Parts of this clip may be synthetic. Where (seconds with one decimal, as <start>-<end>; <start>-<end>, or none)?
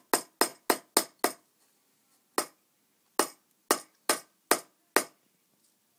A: none